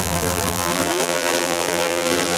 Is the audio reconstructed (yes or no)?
yes